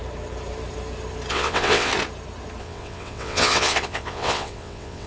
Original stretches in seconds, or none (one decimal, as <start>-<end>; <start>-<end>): 0.0-1.3; 1.9-2.6